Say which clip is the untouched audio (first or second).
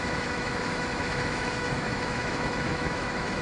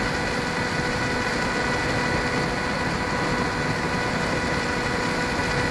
second